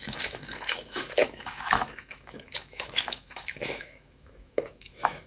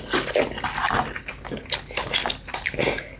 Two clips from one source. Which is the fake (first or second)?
first